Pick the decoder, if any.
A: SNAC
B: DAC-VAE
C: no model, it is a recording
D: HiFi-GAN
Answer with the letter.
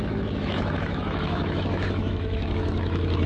B